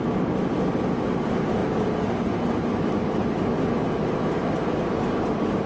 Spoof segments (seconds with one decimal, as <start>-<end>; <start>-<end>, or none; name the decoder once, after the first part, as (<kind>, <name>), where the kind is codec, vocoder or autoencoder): none